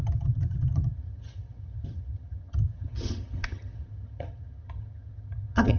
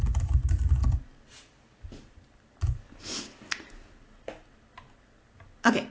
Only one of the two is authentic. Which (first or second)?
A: second